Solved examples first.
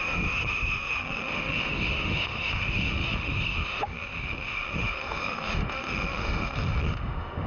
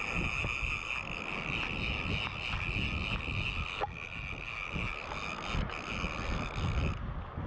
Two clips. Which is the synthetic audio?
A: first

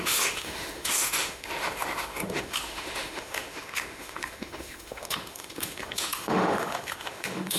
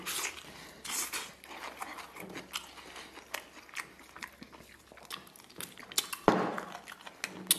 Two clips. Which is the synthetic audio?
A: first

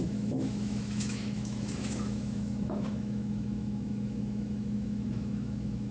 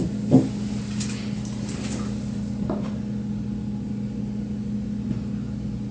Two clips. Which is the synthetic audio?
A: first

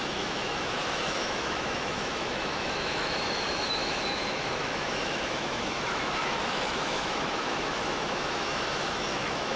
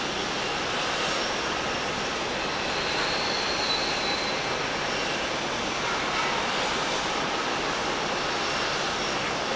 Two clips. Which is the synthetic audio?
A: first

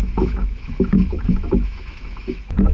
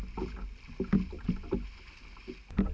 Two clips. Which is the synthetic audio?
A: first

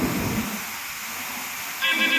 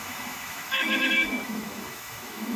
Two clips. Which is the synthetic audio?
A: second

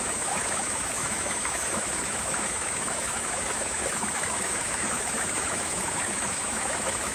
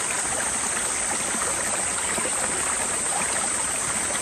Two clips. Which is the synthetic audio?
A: first